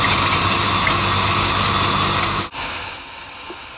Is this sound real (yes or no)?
yes